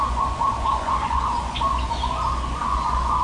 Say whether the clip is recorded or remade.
remade